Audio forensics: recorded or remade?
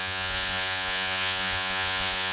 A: remade